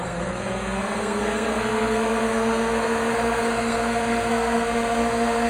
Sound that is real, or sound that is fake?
fake